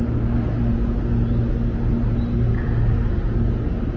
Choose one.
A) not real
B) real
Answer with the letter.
B